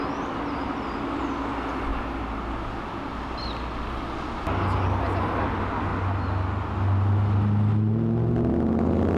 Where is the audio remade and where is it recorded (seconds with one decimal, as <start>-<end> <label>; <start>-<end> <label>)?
0.0-9.2 recorded